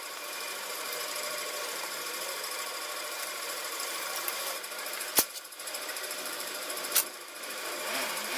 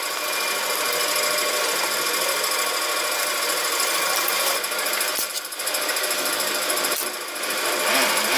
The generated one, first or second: first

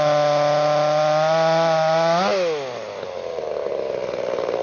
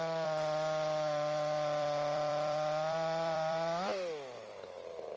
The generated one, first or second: second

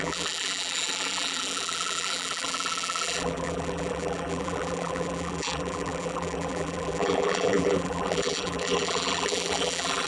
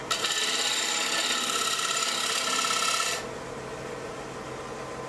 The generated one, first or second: first